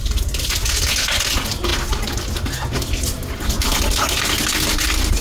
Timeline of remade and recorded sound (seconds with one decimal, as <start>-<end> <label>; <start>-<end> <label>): 0.0-5.2 recorded